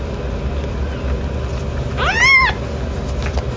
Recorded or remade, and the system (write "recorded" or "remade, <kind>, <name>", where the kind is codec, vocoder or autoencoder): recorded